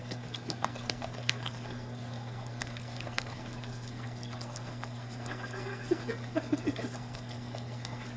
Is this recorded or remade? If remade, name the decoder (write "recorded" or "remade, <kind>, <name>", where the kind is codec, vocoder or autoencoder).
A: remade, codec, SNAC